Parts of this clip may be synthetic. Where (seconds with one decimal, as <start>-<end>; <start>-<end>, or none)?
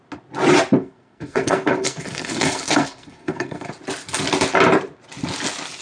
0.8-3.7